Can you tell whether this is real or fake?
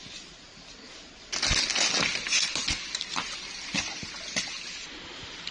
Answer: real